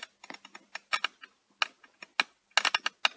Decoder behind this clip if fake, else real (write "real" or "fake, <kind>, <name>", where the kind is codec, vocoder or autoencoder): real